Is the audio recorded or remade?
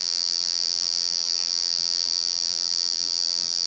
remade